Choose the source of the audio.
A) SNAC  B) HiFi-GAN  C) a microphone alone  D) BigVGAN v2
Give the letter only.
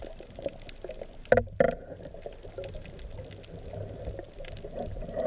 C